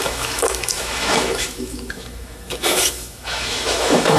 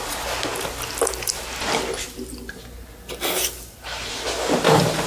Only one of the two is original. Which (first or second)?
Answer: second